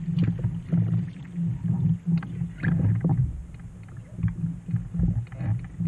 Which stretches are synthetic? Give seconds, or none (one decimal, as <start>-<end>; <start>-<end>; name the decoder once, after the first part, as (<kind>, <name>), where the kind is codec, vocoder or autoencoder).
none